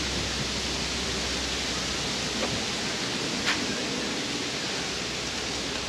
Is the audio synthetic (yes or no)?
no